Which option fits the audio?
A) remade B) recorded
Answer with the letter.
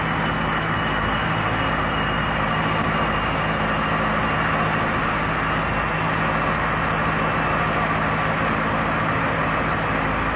B